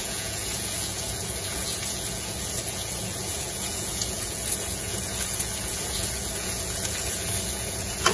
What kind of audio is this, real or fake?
fake